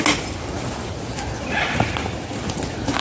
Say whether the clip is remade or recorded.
recorded